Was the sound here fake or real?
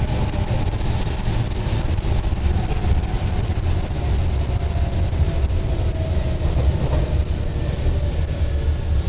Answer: real